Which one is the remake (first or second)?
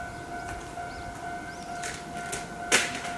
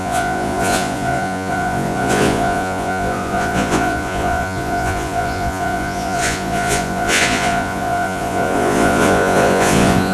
second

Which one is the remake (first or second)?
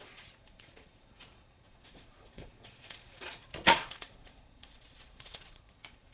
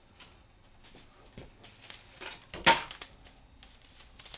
first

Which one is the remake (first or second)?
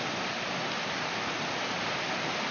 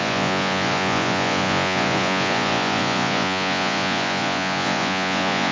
second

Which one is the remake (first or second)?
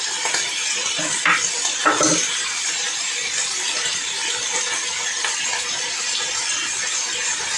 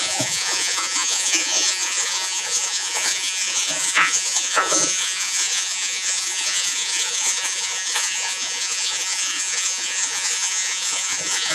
second